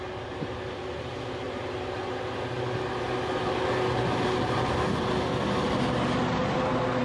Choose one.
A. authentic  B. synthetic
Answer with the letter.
A